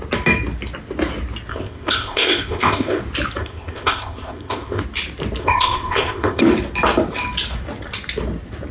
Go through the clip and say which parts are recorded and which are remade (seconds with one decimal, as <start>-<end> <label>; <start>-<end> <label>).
0.0-1.5 recorded; 1.5-3.0 remade; 3.0-3.4 recorded; 3.4-4.8 remade; 4.8-5.4 recorded; 5.4-6.4 remade; 6.4-8.7 recorded